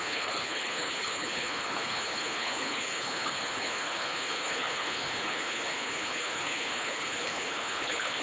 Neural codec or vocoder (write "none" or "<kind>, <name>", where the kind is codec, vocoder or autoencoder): codec, HILCodec